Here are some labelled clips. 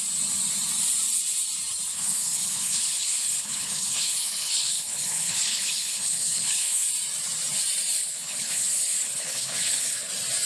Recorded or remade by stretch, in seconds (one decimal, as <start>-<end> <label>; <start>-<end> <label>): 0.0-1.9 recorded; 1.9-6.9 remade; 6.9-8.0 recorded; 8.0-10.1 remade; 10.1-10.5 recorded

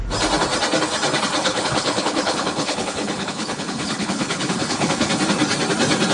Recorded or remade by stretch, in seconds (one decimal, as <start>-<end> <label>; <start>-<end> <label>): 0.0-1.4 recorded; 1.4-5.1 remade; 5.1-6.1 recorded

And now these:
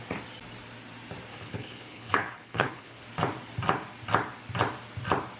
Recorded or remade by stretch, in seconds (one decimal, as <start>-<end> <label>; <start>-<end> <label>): 0.0-1.3 recorded; 1.3-3.0 remade; 3.0-5.4 recorded